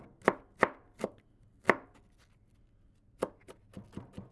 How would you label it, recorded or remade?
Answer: recorded